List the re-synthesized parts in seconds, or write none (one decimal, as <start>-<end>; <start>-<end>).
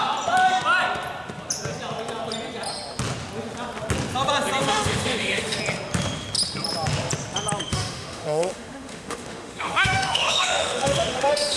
4.6-5.6; 7.7-11.6